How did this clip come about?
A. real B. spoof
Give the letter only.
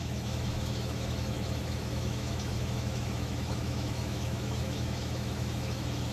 B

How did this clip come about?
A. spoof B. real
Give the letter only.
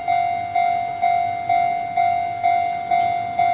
B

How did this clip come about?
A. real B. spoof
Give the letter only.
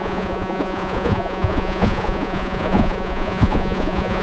B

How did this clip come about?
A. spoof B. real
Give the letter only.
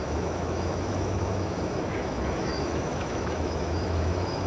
A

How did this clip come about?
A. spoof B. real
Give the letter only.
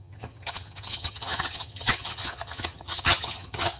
A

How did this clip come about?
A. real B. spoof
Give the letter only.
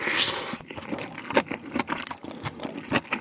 A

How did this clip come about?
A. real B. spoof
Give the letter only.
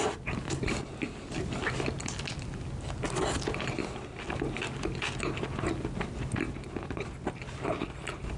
A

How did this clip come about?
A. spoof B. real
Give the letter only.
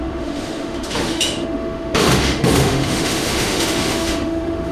A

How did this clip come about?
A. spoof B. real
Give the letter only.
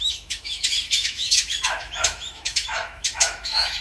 A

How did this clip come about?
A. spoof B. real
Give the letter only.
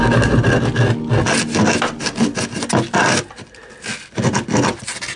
B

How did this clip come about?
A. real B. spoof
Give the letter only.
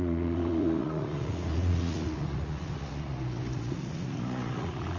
B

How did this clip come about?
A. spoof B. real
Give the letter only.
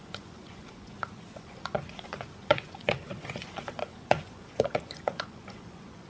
A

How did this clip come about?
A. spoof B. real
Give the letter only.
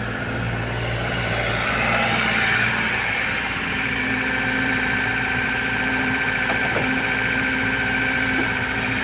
A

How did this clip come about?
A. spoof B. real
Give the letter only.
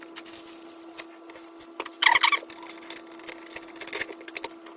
B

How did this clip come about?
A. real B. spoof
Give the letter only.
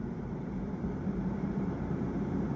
B